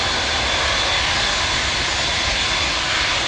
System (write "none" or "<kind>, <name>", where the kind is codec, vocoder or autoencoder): none